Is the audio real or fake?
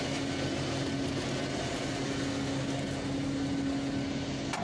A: real